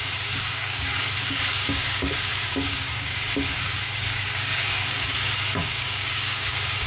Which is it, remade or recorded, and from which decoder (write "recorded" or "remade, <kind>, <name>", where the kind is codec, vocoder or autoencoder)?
remade, codec, DAC